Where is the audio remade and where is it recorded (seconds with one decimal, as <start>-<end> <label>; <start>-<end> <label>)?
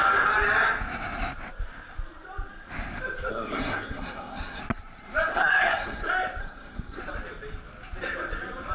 0.0-3.3 recorded; 3.3-4.6 remade; 4.6-5.3 recorded; 5.3-6.0 remade; 6.0-6.4 recorded; 6.4-7.0 remade; 7.0-8.7 recorded